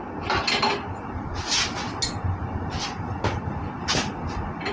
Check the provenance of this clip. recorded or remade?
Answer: recorded